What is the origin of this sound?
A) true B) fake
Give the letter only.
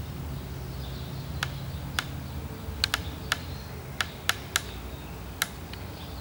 A